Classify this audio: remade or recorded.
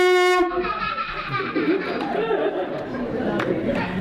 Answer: remade